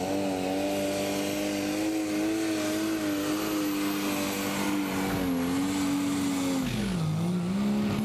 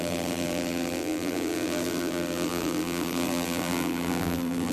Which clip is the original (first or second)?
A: first